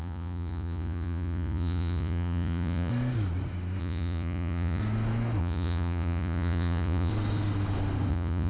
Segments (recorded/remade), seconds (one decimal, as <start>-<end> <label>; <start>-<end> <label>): 0.0-2.9 remade; 2.9-3.8 recorded; 3.8-4.8 remade; 4.8-5.4 recorded; 5.4-7.1 remade; 7.1-8.1 recorded; 8.1-8.5 remade